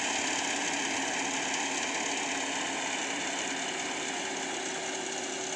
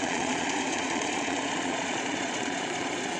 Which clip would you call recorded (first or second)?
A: first